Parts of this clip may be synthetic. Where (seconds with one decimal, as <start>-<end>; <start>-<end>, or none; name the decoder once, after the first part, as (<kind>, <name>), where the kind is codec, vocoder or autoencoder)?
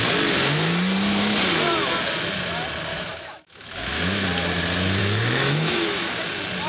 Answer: 2.9-4.2 (autoencoder, DAC-VAE); 5.0-6.1